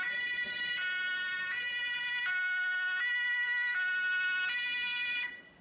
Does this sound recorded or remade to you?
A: recorded